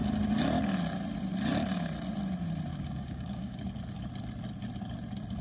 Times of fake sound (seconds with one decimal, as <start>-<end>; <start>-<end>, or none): 2.7-3.7